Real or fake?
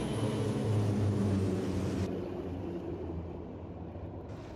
real